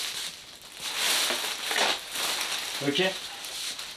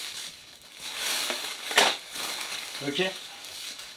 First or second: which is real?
first